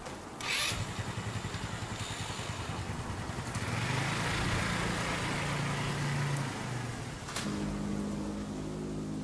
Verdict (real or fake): real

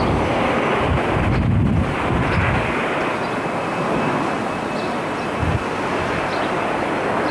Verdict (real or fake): real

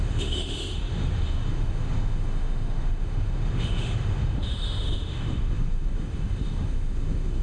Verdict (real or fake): fake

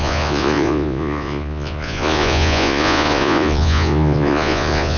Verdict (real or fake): fake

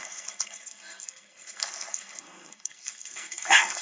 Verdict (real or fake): fake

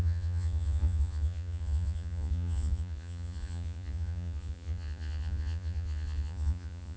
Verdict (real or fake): fake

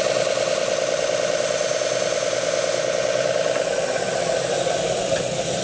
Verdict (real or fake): real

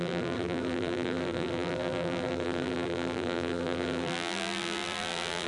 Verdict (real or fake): fake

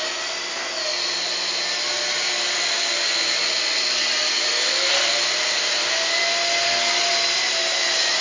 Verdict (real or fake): real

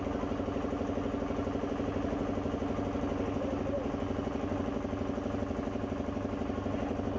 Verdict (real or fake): real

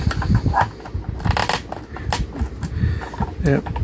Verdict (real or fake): real